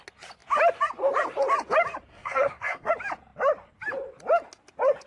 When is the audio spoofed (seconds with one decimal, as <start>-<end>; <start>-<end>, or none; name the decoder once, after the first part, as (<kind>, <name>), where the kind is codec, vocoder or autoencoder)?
2.1-2.9 (codec, SNAC)